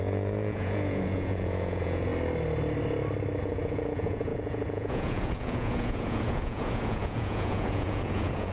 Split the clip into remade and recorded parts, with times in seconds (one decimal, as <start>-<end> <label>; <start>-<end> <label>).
0.0-2.1 remade; 2.1-3.4 recorded; 3.4-8.5 remade